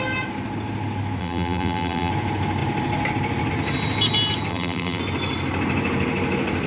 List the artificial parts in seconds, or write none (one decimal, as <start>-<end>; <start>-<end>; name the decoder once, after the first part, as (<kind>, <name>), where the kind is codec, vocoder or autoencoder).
1.2-2.1 (vocoder, BigVGAN v2); 4.5-5.0

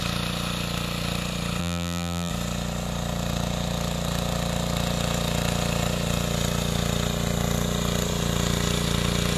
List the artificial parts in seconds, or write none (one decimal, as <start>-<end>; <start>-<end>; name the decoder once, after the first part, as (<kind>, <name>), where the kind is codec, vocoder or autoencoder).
1.6-2.3 (vocoder, BigVGAN v2)

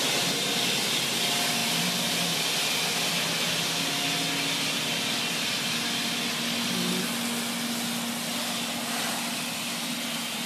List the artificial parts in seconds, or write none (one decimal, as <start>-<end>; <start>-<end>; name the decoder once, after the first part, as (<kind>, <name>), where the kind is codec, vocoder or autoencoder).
1.6-2.4 (vocoder, BigVGAN v2)

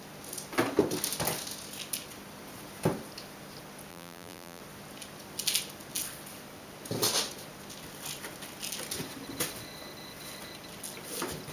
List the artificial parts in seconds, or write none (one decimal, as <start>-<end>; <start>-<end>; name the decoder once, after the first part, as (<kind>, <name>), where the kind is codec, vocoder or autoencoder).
3.9-4.6 (vocoder, BigVGAN v2)

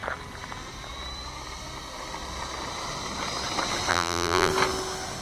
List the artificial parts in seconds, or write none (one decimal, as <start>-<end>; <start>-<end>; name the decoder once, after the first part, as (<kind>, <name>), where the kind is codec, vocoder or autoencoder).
3.9-4.5 (vocoder, BigVGAN v2)

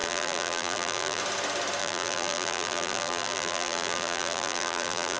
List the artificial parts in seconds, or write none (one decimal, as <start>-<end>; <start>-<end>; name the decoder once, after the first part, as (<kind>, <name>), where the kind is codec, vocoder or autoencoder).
0.0-1.2 (vocoder, BigVGAN v2); 1.8-5.2

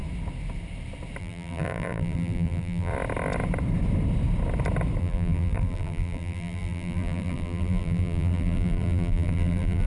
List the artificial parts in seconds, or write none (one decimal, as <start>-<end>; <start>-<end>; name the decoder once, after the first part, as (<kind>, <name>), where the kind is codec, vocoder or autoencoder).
1.2-2.9 (vocoder, BigVGAN v2); 5.0-9.9